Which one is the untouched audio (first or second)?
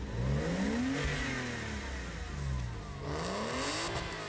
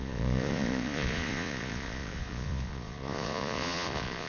first